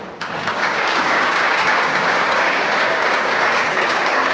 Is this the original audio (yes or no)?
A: no